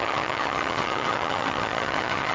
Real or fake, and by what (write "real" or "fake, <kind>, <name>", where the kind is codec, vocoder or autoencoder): fake, vocoder, HiFi-GAN